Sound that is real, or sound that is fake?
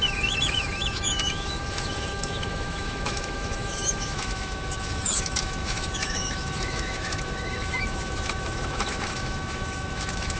fake